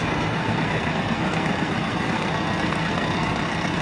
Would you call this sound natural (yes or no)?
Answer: no